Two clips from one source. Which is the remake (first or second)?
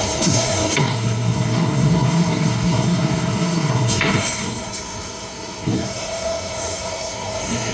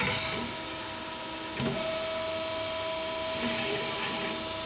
first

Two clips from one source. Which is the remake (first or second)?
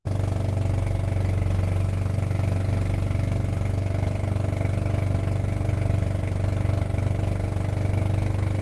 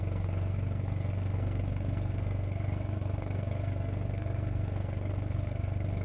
second